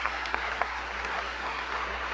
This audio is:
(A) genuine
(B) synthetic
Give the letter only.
B